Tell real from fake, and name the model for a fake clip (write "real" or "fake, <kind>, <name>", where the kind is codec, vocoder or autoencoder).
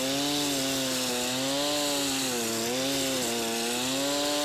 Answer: real